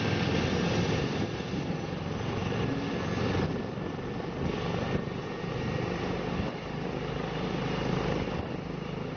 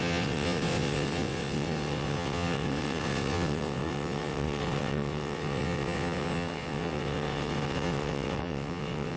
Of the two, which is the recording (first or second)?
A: first